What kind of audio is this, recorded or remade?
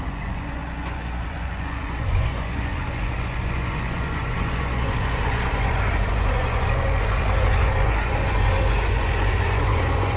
remade